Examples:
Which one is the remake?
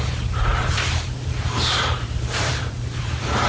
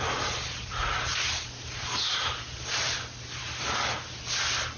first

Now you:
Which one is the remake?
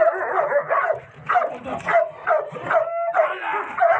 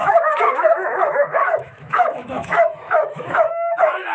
second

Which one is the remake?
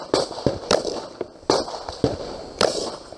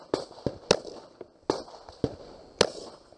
first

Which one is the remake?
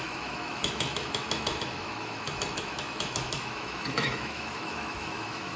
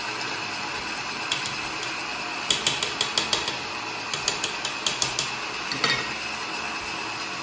first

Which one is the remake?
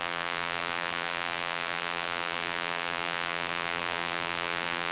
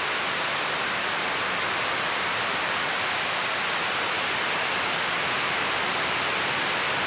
first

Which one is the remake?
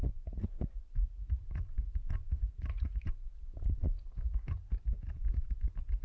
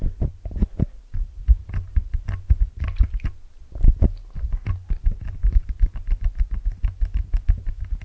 first